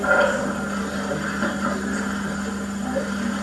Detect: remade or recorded recorded